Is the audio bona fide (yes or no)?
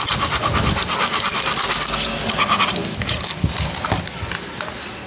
yes